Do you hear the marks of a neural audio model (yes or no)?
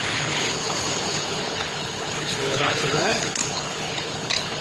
yes